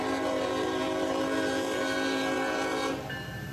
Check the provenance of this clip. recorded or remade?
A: remade